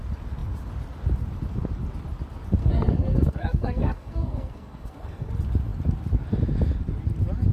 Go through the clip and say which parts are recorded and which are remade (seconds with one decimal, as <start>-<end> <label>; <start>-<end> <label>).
0.0-2.6 recorded; 2.6-5.3 remade; 5.3-7.5 recorded